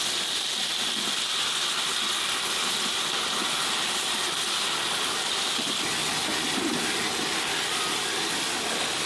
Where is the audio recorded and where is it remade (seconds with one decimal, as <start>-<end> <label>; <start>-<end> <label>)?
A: 0.0-9.1 recorded